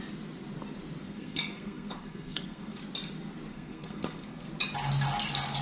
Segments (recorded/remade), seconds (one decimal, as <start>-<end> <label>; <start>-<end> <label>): 0.0-1.0 recorded; 1.0-2.8 remade; 2.8-3.5 recorded; 3.5-4.5 remade; 4.5-5.6 recorded